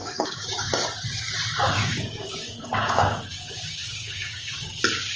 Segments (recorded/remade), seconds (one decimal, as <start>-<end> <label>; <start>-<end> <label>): 0.0-0.7 remade; 0.7-1.7 recorded; 1.7-4.8 remade; 4.8-5.2 recorded